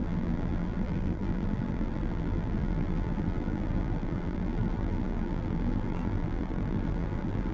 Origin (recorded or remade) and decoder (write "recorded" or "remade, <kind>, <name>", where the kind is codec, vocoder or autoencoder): remade, vocoder, BigVGAN v2